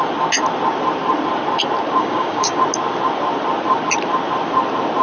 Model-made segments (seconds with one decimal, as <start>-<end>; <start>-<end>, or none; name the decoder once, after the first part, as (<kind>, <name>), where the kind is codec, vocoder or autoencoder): 2.0-2.6 (codec, DAC)